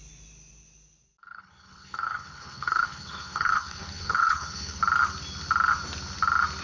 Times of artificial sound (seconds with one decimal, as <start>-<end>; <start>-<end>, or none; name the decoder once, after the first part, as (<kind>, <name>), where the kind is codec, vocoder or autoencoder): 1.2-4.8 (codec, HILCodec)